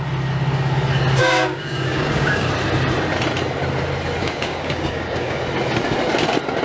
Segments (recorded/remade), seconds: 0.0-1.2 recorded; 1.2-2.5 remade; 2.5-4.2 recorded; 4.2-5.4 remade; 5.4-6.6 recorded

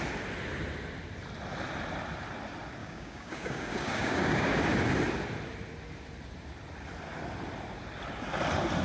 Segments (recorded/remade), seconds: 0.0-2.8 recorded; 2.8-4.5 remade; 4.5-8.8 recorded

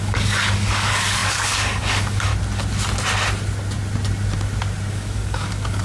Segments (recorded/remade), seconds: 0.0-2.3 remade; 2.3-4.9 recorded; 4.9-5.8 remade

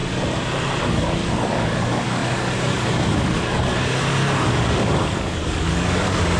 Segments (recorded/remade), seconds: 0.0-0.8 recorded; 0.8-6.4 remade